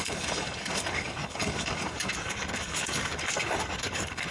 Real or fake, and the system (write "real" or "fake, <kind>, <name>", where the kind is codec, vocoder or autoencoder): fake, codec, DAC